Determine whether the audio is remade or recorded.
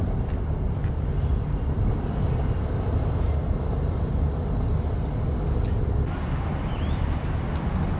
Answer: recorded